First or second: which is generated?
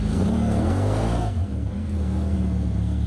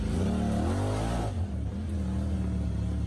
first